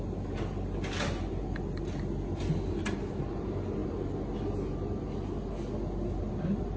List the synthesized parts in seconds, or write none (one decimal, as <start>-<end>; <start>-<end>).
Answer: none